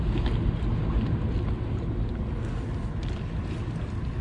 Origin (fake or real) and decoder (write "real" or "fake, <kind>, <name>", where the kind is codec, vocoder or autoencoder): real